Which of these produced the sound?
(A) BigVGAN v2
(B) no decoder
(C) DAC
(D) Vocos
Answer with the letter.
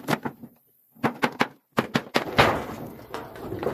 B